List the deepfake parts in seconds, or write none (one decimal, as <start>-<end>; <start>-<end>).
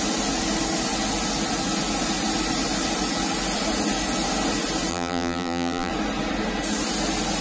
4.9-5.9